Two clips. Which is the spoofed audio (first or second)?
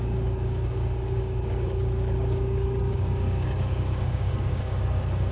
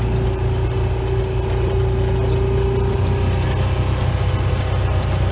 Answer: first